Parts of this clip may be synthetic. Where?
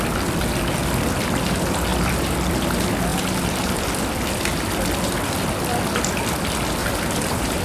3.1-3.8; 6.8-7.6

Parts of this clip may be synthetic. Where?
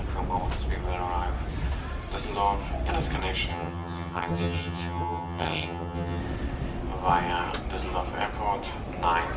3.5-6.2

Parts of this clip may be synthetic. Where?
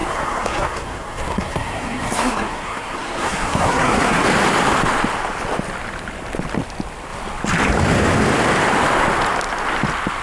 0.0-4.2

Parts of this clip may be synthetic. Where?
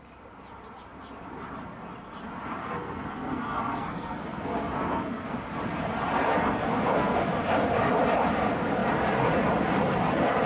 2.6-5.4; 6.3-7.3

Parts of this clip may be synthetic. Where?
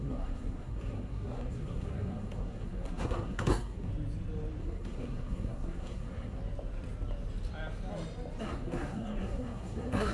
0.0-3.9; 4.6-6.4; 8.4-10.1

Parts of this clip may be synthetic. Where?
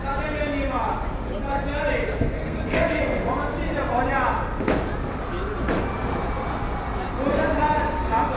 2.4-3.0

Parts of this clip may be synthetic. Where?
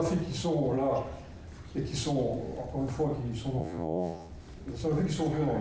3.6-4.3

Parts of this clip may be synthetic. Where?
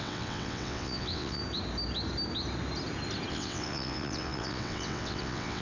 0.0-1.4; 3.3-5.6